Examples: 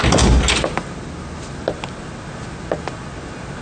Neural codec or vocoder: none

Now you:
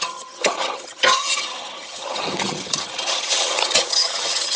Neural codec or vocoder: vocoder, HiFi-GAN